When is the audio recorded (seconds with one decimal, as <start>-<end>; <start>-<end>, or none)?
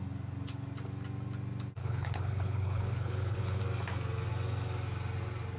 0.0-1.8; 3.6-5.6